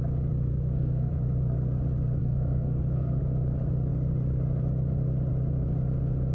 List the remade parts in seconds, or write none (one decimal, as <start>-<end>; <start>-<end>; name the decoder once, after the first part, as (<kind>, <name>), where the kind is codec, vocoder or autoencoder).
0.5-1.1 (codec, SNAC); 2.2-3.2